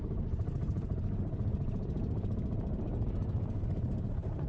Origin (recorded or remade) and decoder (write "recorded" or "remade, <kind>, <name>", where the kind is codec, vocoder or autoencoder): remade, vocoder, BigVGAN v2